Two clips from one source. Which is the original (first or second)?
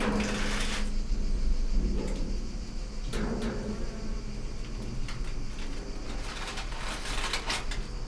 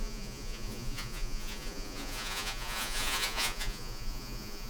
first